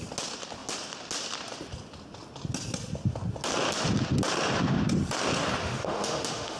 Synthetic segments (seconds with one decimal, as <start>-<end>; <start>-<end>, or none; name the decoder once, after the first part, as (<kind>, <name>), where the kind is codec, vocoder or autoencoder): 5.6-6.6 (autoencoder, DAC-VAE)